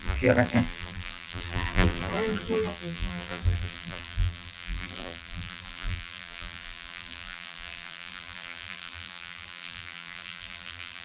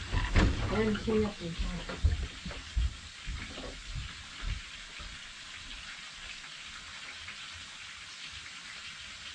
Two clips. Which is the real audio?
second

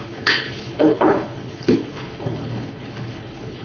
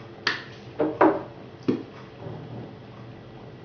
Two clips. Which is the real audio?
second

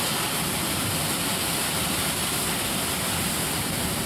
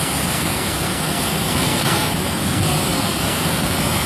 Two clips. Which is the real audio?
first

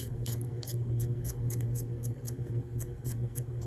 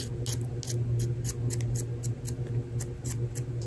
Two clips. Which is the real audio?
second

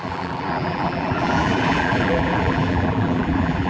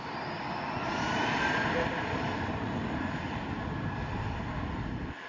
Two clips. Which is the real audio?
second